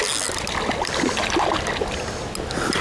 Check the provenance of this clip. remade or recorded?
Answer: recorded